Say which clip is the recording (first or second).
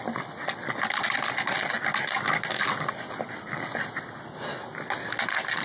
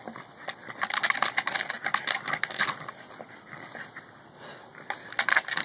first